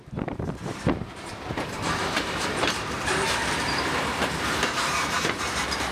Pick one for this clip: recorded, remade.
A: remade